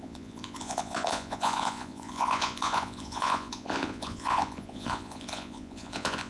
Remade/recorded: remade